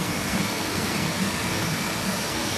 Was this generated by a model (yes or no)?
yes